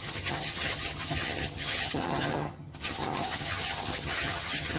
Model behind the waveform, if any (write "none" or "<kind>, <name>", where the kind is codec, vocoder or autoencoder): vocoder, HiFi-GAN